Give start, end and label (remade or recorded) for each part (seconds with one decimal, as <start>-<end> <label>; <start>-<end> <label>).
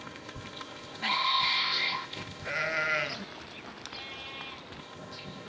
0.0-2.5 remade; 2.5-4.8 recorded; 4.8-5.5 remade